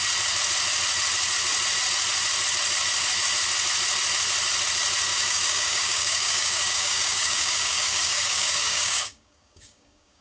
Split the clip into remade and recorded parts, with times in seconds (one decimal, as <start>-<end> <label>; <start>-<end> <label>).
0.0-5.1 recorded; 5.1-10.2 remade